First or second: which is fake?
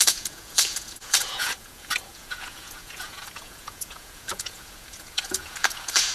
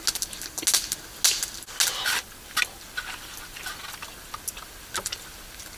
first